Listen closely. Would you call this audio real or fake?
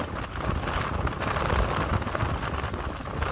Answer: real